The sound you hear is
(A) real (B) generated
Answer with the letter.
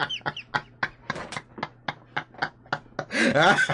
A